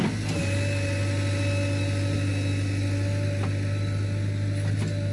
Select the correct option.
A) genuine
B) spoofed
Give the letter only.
A